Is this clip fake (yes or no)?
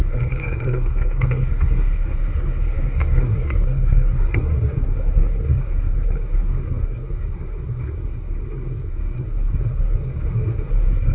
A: yes